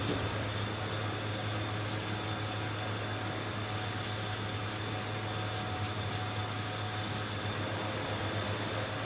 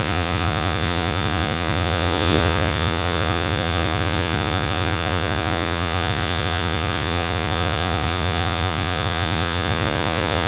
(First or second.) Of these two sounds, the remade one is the second